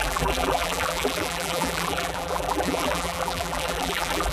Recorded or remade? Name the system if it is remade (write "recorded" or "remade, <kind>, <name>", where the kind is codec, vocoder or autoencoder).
remade, vocoder, BigVGAN v2